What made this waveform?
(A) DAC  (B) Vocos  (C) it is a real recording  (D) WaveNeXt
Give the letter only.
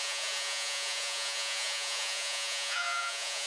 B